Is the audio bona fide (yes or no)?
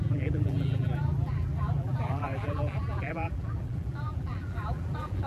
no